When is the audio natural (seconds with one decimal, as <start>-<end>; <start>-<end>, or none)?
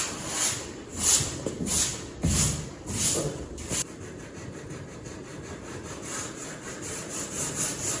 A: 1.9-3.3